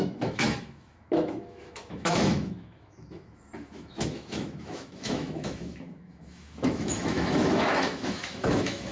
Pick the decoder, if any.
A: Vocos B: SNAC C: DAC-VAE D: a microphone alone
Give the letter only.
C